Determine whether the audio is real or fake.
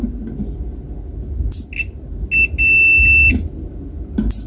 real